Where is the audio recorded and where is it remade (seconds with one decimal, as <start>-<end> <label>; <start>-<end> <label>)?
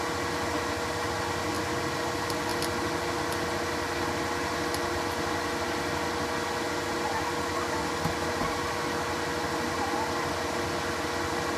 0.0-11.6 recorded